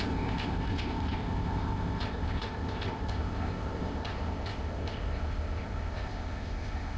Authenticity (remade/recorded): remade